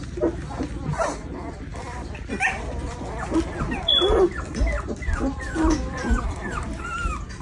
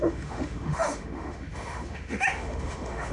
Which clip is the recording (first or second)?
first